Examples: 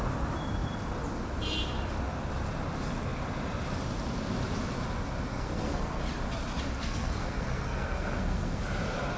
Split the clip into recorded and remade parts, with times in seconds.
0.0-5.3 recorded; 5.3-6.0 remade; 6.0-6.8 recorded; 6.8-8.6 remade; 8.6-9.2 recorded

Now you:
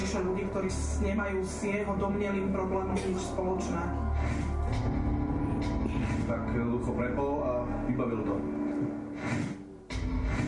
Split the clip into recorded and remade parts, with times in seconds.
0.0-10.5 recorded